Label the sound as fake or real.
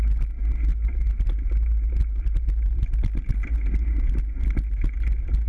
real